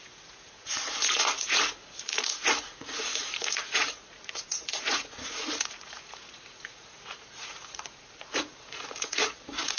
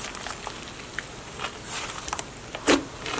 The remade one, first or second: first